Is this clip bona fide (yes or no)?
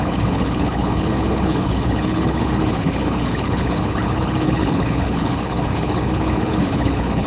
no